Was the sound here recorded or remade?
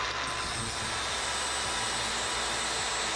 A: recorded